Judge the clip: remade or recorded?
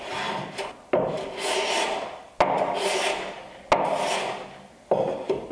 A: recorded